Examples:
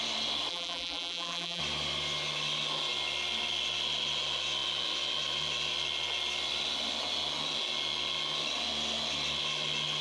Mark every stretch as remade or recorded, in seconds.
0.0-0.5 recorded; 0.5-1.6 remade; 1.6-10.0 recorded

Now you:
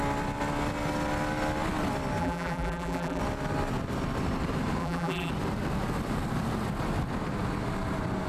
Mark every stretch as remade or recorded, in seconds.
0.0-2.2 recorded; 2.2-3.2 remade; 3.2-4.8 recorded; 4.8-5.3 remade; 5.3-8.3 recorded

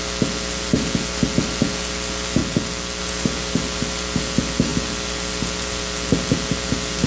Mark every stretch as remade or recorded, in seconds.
0.0-7.1 recorded

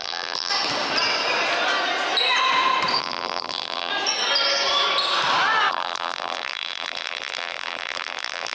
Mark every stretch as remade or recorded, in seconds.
0.0-0.5 remade; 0.5-3.0 recorded; 3.0-3.9 remade; 3.9-5.7 recorded; 5.7-8.5 remade